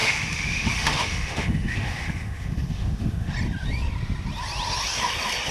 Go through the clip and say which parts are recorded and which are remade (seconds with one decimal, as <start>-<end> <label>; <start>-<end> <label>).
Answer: 0.0-3.3 remade; 3.3-5.5 recorded